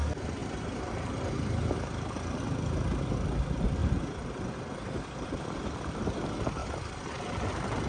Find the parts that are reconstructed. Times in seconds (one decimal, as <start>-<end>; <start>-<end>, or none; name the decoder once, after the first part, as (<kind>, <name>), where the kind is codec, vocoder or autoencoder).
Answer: 0.4-2.4 (vocoder, BigVGAN v2); 3.8-5.9; 6.6-7.2